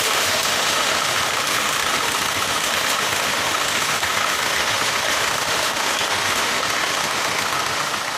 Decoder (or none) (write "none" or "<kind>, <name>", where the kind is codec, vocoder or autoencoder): autoencoder, DAC-VAE